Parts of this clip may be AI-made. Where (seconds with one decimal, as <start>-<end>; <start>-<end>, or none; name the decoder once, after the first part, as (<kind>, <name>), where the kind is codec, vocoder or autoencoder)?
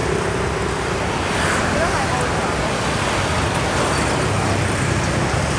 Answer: none